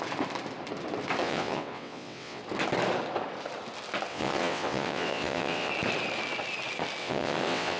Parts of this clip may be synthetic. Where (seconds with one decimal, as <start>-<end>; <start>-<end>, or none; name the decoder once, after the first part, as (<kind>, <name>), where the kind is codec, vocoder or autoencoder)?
1.2-2.4 (vocoder, WaveNeXt); 4.1-5.7; 7.0-7.8